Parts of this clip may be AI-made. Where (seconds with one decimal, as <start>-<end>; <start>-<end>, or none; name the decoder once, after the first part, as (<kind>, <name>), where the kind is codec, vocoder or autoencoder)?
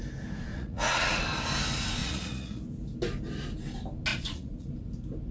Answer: 0.5-1.2 (vocoder, Vocos); 2.0-2.6; 4.1-4.7